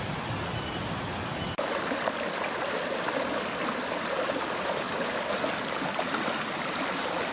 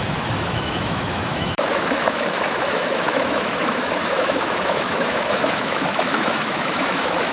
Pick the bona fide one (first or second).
first